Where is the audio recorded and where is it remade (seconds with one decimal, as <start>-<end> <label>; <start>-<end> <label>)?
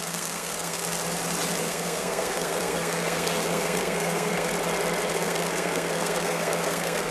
0.0-0.8 remade; 0.8-1.6 recorded; 1.6-4.5 remade; 4.5-5.1 recorded; 5.1-7.1 remade